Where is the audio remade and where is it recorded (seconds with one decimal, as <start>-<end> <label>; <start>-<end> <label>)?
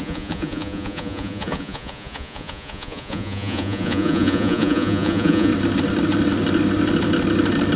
0.0-5.5 remade; 5.5-7.8 recorded